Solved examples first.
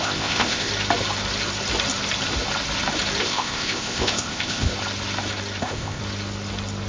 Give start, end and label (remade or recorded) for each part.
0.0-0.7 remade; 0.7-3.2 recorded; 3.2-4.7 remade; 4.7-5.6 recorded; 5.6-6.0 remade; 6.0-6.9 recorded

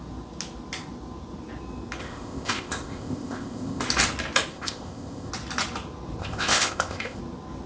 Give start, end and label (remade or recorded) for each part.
0.0-2.0 recorded; 2.0-3.8 remade; 3.8-4.5 recorded; 4.5-5.3 remade; 5.3-6.2 recorded; 6.2-7.2 remade; 7.2-7.7 recorded

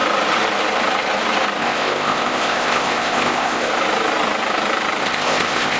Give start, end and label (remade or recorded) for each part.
0.0-1.6 recorded; 1.6-3.7 remade; 3.7-5.0 recorded; 5.0-5.8 remade